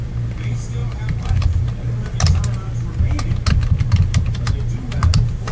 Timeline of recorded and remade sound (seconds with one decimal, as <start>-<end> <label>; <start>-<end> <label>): 0.0-5.5 recorded